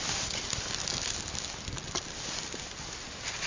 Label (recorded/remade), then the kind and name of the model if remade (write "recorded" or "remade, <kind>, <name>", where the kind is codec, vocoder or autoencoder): recorded